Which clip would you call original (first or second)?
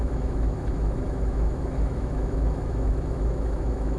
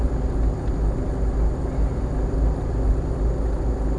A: second